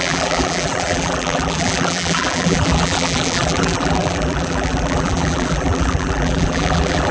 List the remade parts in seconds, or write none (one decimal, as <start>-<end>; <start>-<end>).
0.0-7.1